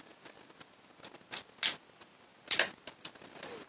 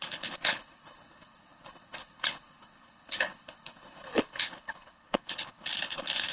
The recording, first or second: first